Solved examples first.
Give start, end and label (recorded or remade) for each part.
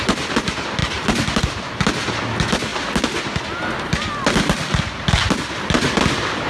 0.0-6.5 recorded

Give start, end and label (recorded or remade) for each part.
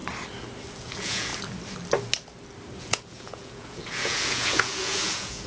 0.0-0.8 recorded; 0.8-1.3 remade; 1.3-2.8 recorded; 2.8-5.5 remade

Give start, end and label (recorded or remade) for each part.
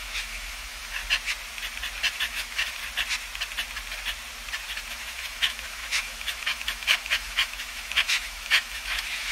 0.0-1.0 remade; 1.0-2.2 recorded; 2.2-2.8 remade; 2.8-4.9 recorded; 4.9-9.3 remade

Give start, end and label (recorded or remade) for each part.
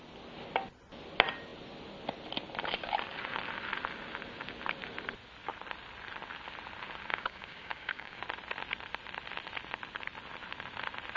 0.0-7.1 recorded; 7.1-8.2 remade; 8.2-11.2 recorded